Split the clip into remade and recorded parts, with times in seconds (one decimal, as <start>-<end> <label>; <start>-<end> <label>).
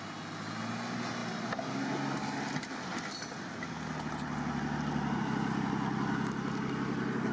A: 0.0-7.3 recorded